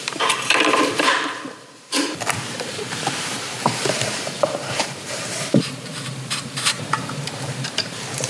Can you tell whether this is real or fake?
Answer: fake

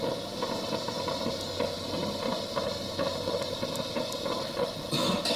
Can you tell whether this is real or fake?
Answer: real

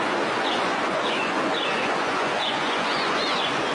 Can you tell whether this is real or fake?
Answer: fake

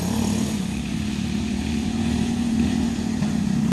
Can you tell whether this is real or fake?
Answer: fake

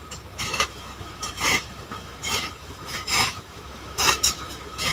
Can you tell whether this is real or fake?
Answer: fake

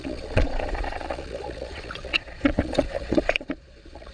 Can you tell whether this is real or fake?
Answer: fake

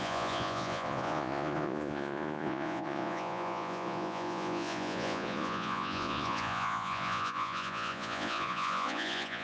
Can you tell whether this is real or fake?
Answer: fake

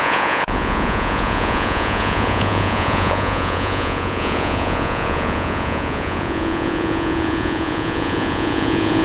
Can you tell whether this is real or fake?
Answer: fake